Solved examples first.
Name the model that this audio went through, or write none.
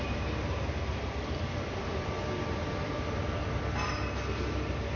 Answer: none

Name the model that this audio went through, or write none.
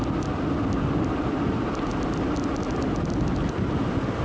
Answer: none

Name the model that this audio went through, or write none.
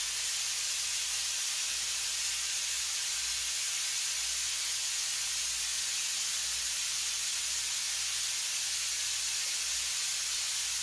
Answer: none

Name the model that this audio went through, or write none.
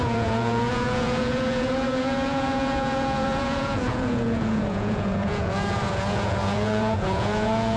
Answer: vocoder, Vocos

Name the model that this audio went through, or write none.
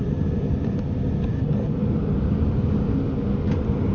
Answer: none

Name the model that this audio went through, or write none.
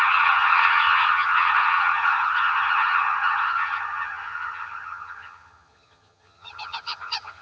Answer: vocoder, HiFi-GAN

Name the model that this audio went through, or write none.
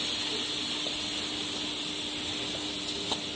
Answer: none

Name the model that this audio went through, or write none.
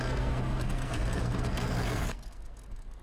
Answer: codec, SNAC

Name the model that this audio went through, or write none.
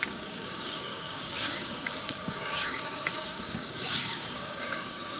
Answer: codec, DAC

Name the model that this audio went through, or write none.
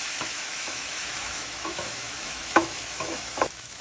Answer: autoencoder, DAC-VAE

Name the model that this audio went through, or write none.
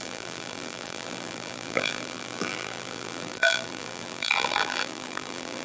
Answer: vocoder, BigVGAN v2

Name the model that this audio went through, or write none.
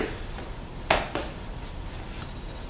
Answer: none